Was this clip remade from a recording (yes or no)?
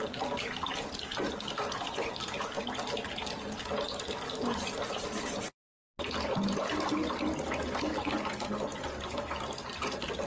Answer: no